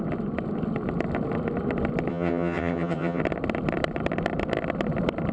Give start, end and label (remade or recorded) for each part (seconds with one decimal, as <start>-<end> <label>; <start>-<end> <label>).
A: 0.0-2.1 recorded; 2.1-3.2 remade; 3.2-5.3 recorded